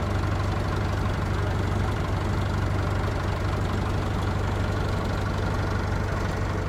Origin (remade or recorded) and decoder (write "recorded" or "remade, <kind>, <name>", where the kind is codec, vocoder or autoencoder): recorded